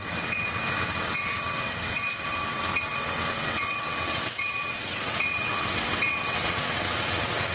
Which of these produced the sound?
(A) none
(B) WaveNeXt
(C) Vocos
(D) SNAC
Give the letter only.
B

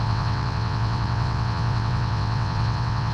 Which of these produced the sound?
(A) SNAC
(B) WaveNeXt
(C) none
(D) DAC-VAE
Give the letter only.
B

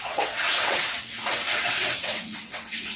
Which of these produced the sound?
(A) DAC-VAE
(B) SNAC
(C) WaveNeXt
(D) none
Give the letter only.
C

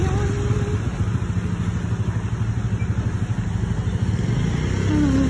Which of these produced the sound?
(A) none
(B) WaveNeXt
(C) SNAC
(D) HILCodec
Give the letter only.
A